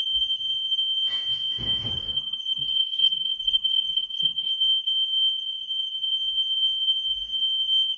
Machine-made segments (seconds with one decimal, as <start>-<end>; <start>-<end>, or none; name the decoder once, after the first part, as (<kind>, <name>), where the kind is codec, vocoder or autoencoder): 1.9-4.5 (codec, SNAC)